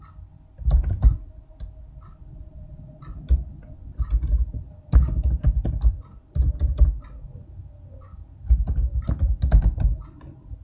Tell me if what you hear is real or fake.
real